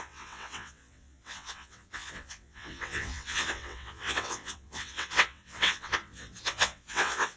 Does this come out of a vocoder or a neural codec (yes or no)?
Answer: yes